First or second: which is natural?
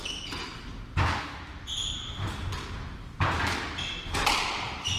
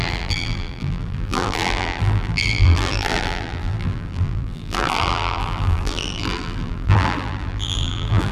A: first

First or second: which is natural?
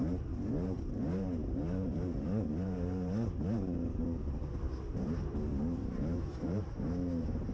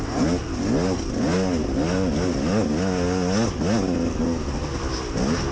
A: second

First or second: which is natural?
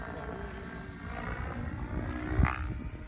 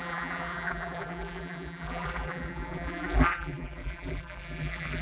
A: first